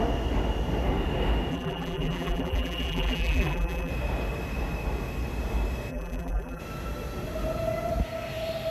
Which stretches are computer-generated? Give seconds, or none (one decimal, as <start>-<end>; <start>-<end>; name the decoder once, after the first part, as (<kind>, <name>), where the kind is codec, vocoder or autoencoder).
1.5-3.9 (vocoder, BigVGAN v2); 5.9-6.6